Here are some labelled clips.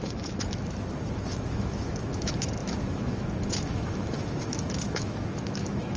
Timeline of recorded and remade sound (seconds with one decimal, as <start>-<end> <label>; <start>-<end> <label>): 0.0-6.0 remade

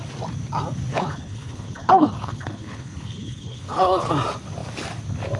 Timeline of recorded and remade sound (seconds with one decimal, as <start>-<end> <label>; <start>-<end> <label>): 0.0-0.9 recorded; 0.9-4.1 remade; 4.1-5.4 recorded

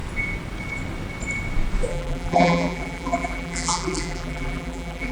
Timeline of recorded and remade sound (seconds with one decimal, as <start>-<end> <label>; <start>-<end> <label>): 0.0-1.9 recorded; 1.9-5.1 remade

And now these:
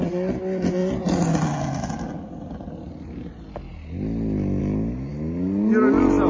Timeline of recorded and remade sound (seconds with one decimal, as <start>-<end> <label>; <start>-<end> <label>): 0.0-6.3 recorded

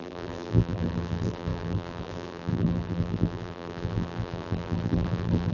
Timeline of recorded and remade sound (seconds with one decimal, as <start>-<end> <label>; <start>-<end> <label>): 0.0-5.5 remade

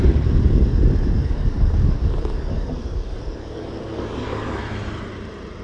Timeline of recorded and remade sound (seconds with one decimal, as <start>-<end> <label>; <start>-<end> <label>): 0.0-1.2 recorded; 1.2-4.6 remade; 4.6-5.6 recorded